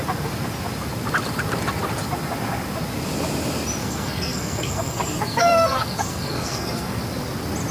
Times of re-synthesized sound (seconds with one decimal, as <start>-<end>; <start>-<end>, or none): 3.8-7.0